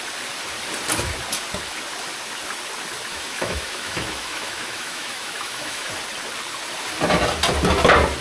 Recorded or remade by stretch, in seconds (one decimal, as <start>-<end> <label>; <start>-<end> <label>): 0.0-3.1 recorded; 3.1-5.9 remade; 5.9-8.2 recorded